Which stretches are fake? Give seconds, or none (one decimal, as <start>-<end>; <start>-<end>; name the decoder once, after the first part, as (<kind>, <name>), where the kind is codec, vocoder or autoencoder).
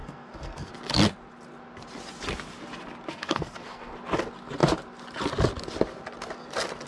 0.0-0.7 (codec, SNAC); 3.1-3.9